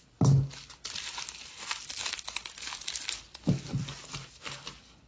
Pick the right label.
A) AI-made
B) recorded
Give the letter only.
B